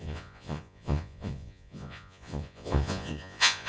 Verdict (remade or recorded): remade